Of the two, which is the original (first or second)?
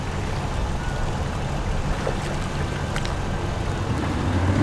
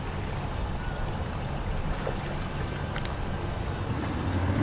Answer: first